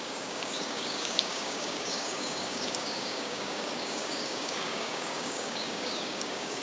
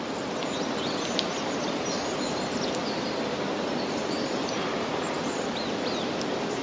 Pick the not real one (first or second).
first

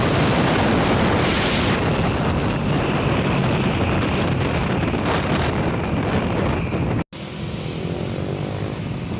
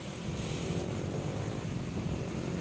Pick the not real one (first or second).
second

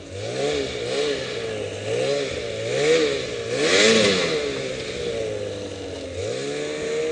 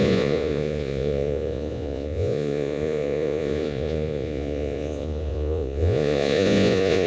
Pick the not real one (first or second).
second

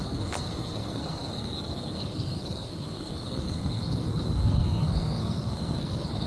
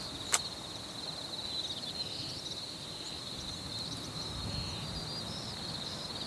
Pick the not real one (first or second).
first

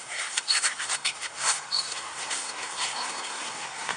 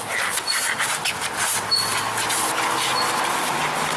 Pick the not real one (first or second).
first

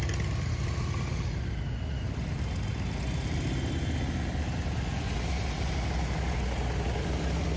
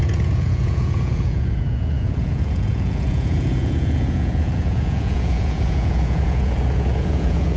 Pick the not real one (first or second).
second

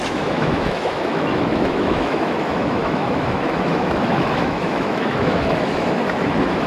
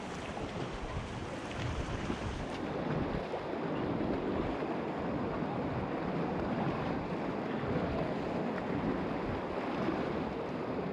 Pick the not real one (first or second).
first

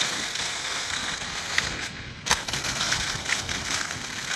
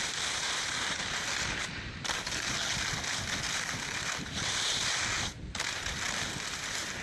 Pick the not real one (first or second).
first